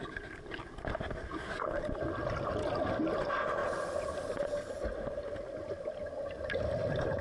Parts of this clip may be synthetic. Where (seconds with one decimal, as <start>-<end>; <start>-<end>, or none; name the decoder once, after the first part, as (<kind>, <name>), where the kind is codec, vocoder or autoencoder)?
none